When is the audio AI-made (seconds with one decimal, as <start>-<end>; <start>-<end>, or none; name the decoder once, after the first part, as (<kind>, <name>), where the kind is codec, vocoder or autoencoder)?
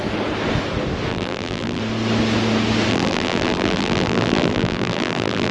1.1-1.8 (vocoder, BigVGAN v2); 2.9-5.5